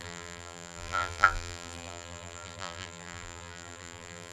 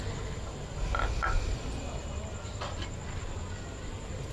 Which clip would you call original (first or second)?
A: second